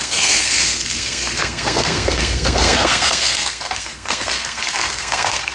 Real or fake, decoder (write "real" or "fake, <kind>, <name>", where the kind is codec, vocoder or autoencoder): fake, codec, SNAC